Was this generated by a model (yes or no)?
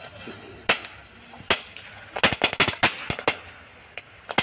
no